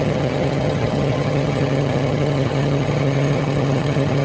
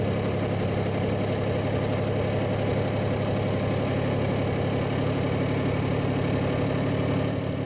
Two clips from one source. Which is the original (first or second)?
second